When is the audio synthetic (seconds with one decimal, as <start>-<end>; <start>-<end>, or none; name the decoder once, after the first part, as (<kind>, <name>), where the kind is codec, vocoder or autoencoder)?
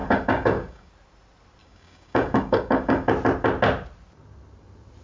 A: 0.0-0.9 (codec, DAC); 1.6-3.1